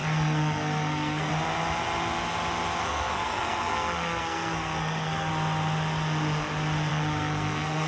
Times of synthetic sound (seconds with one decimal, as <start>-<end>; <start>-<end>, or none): 0.0-1.3; 2.8-5.3; 6.9-7.9